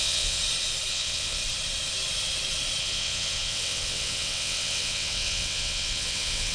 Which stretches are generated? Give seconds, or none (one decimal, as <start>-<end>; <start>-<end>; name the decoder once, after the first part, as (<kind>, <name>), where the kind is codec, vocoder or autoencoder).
0.0-0.4 (vocoder, WaveNeXt); 0.9-1.4; 2.8-6.5